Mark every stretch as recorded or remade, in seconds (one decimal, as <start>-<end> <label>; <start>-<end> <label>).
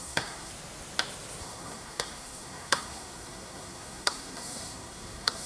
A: 0.0-0.5 remade; 0.5-1.4 recorded; 1.4-5.5 remade